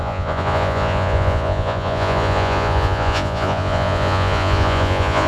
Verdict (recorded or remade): remade